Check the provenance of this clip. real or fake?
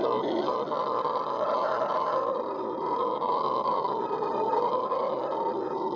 real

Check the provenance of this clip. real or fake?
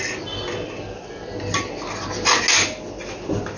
real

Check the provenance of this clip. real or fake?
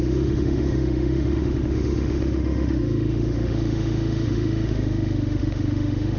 fake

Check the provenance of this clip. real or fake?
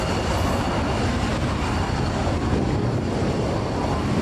real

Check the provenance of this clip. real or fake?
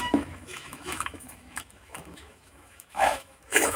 fake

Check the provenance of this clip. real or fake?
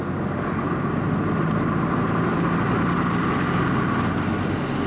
real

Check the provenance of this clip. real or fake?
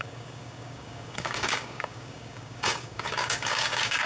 fake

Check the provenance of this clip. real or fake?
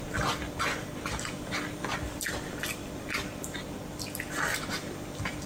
real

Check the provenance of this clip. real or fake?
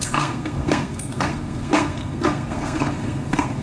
fake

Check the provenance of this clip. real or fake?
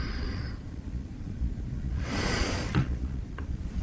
fake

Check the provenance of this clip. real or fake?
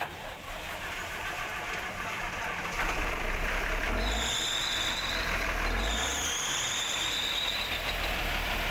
fake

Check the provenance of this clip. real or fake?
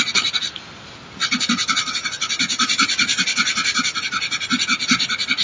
real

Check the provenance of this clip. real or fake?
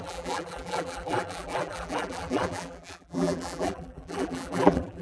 fake